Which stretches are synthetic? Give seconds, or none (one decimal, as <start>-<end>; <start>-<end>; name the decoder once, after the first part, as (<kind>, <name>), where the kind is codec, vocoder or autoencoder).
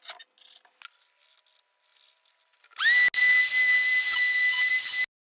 none